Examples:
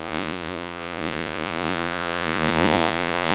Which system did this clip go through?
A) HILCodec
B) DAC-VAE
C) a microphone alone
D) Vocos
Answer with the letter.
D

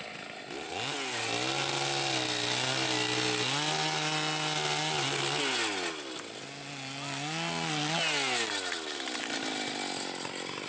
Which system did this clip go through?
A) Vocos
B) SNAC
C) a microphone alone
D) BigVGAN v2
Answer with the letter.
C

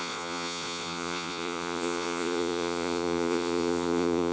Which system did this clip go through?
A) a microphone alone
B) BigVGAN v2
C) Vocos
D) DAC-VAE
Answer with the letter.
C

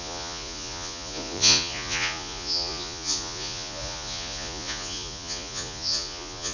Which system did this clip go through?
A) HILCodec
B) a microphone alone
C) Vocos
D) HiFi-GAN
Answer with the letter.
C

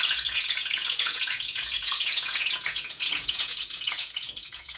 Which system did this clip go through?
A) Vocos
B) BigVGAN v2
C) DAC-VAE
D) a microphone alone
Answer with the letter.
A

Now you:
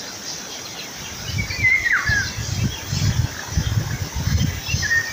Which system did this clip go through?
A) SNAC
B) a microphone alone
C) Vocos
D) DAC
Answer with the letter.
B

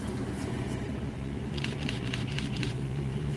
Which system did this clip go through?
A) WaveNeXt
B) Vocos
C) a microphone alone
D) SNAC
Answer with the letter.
B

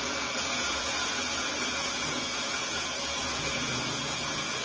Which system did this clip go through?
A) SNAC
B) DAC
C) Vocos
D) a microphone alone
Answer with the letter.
C